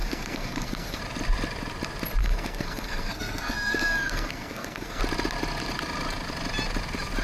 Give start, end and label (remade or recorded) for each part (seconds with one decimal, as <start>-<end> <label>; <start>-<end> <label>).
0.0-1.0 remade; 1.0-2.2 recorded; 2.2-5.0 remade; 5.0-7.2 recorded